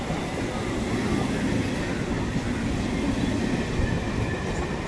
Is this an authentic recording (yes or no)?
yes